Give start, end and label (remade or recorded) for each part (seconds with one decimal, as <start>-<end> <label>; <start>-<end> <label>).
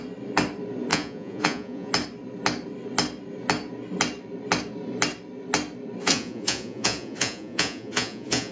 0.0-0.9 recorded; 0.9-1.9 remade; 1.9-6.0 recorded; 6.0-8.5 remade